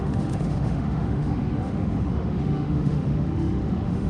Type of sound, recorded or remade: remade